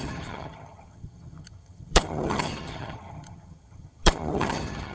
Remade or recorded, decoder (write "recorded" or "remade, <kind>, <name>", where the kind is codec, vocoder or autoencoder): remade, vocoder, HiFi-GAN